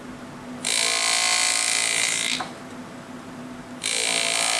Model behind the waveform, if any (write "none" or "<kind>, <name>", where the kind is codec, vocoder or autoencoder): none